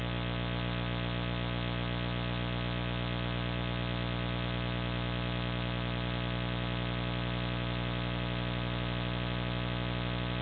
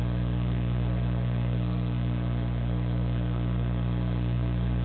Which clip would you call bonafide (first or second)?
first